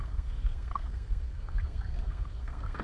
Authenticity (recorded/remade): remade